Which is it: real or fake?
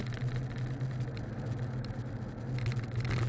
real